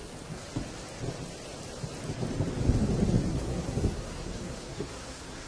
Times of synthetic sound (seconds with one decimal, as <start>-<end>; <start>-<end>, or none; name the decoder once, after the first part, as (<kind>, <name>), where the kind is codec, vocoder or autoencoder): 3.3-5.5 (codec, SNAC)

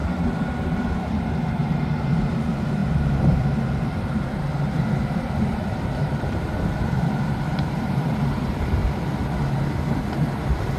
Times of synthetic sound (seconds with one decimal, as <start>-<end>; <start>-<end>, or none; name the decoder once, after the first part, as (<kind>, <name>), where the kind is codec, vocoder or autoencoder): 0.0-8.8 (vocoder, BigVGAN v2)